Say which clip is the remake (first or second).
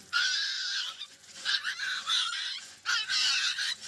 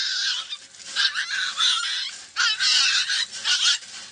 first